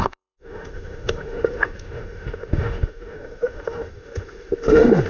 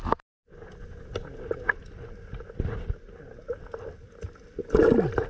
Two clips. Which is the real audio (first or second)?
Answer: second